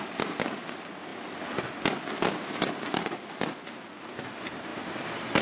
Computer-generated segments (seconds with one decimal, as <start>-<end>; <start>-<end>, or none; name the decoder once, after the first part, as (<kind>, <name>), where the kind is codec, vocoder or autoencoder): none